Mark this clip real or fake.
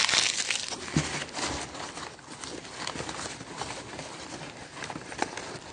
real